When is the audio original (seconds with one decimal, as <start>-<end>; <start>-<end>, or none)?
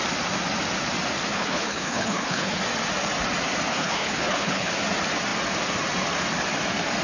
0.0-1.3; 2.6-3.7; 4.7-7.0